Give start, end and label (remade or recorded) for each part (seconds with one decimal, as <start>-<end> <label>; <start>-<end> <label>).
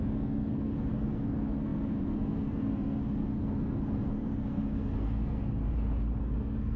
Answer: 0.0-5.4 remade; 5.4-6.2 recorded; 6.2-6.8 remade